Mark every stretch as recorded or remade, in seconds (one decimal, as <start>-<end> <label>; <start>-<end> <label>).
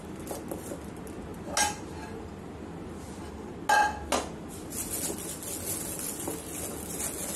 0.0-7.4 recorded